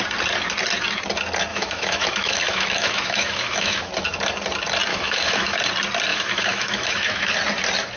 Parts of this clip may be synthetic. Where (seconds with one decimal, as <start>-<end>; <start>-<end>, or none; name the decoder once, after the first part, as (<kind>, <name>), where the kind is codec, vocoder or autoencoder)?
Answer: 1.5-3.9 (autoencoder, DAC-VAE); 4.9-5.6; 6.1-7.3